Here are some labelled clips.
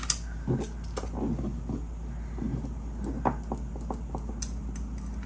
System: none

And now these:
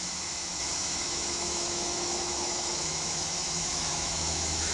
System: autoencoder, DAC-VAE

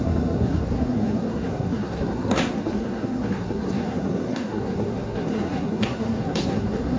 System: codec, SNAC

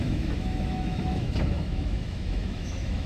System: autoencoder, DAC-VAE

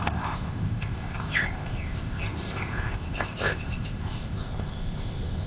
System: codec, ZipCodec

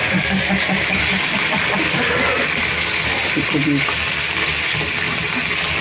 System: none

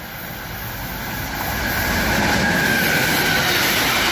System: none